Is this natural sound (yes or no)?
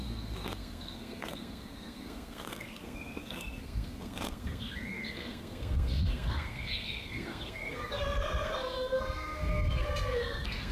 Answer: no